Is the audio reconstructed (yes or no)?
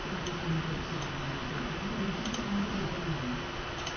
no